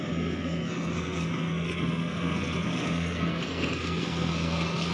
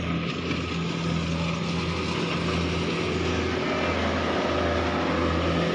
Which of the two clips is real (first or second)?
second